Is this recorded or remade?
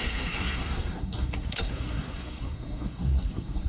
remade